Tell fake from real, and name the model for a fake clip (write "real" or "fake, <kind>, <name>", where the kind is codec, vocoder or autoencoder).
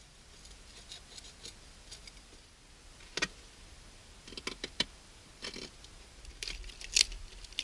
real